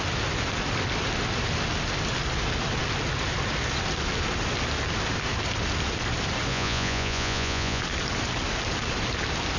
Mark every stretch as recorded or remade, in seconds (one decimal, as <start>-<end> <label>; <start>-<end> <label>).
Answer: 0.0-6.5 recorded; 6.5-7.8 remade; 7.8-9.6 recorded